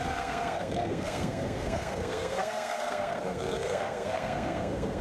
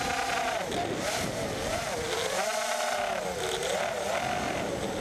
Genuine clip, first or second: second